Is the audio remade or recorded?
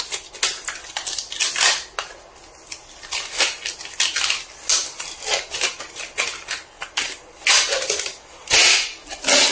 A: recorded